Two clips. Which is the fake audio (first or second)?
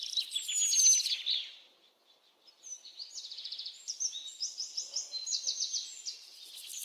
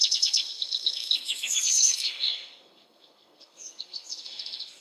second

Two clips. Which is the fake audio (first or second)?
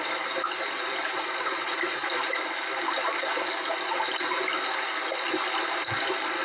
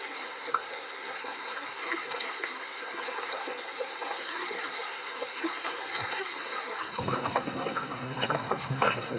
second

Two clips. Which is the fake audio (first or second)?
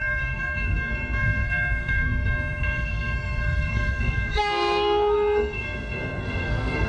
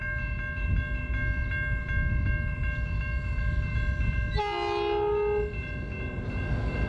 first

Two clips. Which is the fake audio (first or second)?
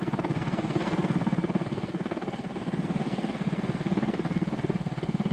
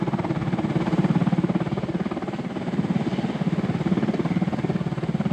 first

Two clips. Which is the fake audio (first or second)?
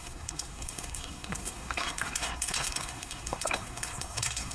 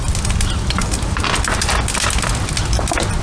first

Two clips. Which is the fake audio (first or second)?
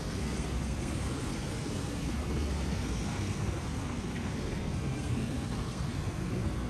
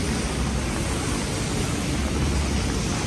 first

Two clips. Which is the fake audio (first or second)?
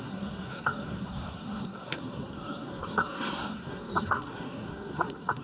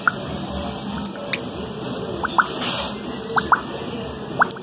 first